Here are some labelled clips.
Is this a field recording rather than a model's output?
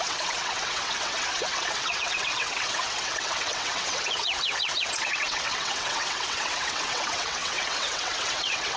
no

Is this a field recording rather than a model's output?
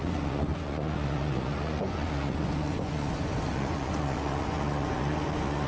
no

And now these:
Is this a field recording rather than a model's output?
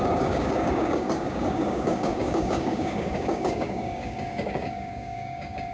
no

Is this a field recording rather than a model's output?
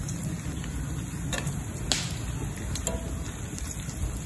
yes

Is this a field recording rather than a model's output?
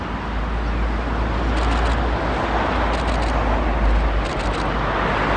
yes